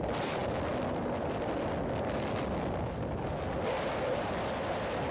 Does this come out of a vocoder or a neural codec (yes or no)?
no